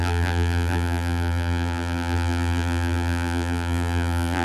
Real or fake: fake